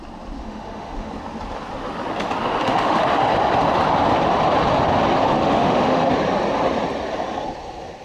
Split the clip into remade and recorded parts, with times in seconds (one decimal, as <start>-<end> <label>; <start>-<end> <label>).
0.0-0.4 recorded; 0.4-1.1 remade; 1.1-2.6 recorded; 2.6-3.1 remade; 3.1-5.4 recorded; 5.4-6.1 remade; 6.1-8.0 recorded